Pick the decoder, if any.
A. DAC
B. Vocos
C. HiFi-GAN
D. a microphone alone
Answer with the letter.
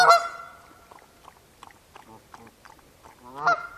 D